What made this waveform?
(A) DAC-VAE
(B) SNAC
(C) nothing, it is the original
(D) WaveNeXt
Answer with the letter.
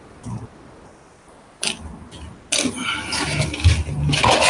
C